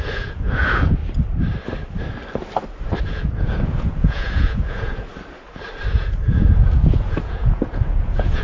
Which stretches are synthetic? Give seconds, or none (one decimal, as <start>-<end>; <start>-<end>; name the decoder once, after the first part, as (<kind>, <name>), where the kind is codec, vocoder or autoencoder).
0.0-1.0 (vocoder, Vocos); 3.0-5.1; 5.9-8.4